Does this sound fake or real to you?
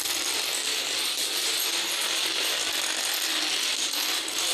real